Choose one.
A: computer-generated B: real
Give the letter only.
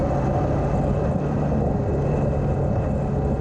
B